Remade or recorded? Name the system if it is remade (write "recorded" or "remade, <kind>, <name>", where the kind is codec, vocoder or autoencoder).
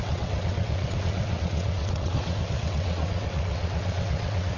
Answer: remade, vocoder, WaveNeXt